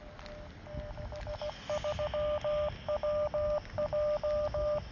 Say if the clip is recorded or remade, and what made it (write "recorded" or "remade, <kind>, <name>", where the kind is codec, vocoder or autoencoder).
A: recorded